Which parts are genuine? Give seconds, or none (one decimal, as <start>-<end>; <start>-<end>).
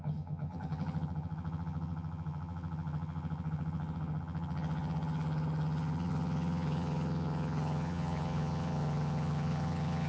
none